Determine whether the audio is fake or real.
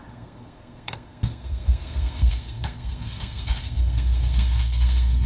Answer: fake